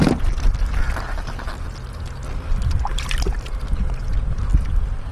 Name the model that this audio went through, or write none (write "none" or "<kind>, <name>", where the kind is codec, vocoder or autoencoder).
none